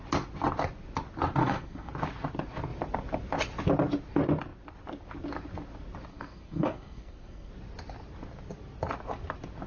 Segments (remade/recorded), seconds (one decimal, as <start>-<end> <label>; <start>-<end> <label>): 0.0-1.4 recorded; 1.4-1.9 remade; 1.9-6.1 recorded; 6.1-7.5 remade; 7.5-9.7 recorded